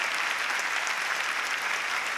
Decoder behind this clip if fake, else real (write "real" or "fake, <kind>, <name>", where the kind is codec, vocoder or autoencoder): fake, vocoder, BigVGAN v2